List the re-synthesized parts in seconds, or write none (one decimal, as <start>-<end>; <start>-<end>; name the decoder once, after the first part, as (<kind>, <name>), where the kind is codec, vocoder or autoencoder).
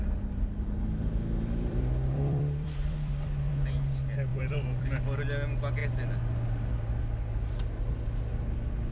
1.7-3.5 (vocoder, BigVGAN v2); 4.3-5.2